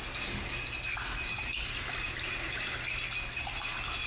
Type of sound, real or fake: real